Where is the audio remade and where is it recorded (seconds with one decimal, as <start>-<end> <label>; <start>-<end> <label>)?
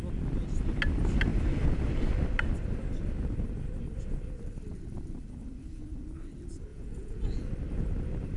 0.0-6.7 recorded; 6.7-7.5 remade; 7.5-8.4 recorded